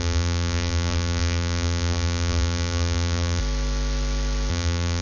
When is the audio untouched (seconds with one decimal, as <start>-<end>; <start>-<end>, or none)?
3.4-4.5